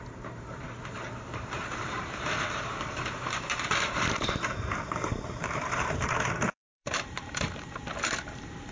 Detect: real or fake fake